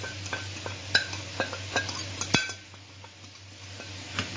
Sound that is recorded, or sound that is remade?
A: recorded